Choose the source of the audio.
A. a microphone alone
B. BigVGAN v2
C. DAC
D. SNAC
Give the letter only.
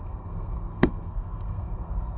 D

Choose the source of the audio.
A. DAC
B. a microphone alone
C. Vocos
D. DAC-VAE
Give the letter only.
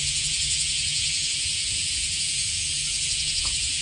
C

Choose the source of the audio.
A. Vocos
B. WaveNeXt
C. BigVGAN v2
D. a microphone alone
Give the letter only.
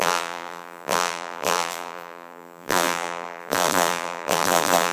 C